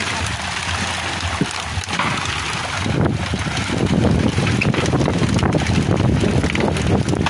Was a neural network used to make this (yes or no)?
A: no